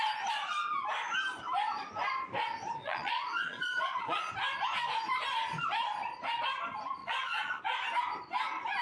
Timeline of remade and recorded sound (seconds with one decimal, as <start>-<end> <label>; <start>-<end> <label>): 0.0-2.8 recorded; 2.8-4.3 remade; 4.3-7.0 recorded; 7.0-7.6 remade; 7.6-8.8 recorded